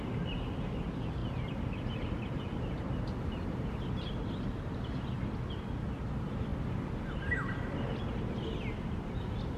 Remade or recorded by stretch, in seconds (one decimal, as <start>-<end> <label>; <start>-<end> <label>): 0.0-9.6 recorded